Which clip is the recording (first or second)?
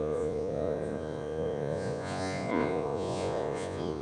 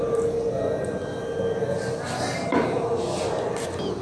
second